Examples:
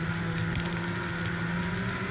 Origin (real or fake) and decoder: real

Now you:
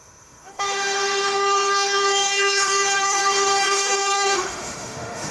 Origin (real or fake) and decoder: fake, autoencoder, DAC-VAE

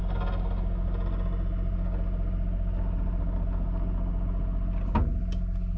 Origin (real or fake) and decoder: real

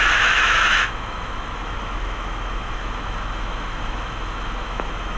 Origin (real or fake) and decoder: fake, autoencoder, DAC-VAE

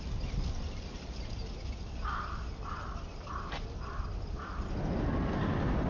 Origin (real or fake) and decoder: real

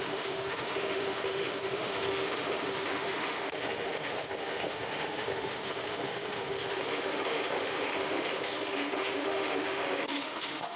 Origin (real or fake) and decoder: fake, autoencoder, DAC-VAE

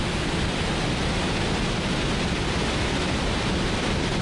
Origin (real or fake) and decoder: real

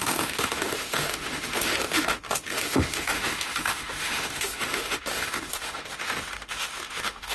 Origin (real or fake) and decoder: fake, autoencoder, DAC-VAE